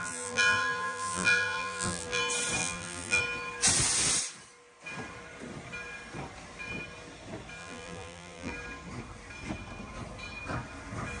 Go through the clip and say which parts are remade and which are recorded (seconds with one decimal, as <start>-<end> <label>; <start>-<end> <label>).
0.0-2.2 remade; 2.2-2.6 recorded; 2.6-3.2 remade; 3.2-7.6 recorded; 7.6-8.5 remade; 8.5-11.2 recorded